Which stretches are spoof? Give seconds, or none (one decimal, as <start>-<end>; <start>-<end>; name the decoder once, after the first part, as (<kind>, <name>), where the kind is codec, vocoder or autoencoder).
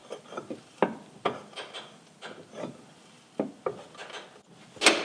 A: 0.0-3.0 (vocoder, BigVGAN v2)